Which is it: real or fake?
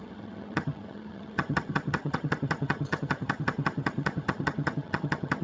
fake